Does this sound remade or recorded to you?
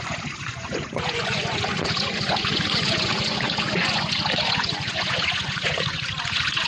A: remade